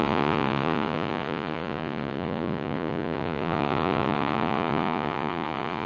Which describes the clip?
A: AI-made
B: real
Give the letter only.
A